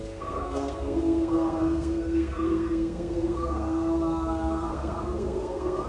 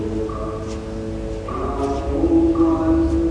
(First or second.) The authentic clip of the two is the second